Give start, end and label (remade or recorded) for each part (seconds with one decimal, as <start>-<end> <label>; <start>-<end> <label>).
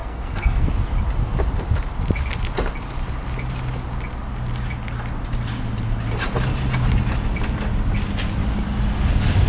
0.0-0.7 remade; 0.7-9.5 recorded